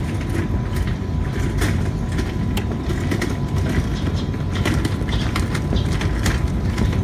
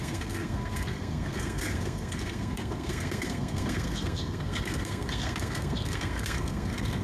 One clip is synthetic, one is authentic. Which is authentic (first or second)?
first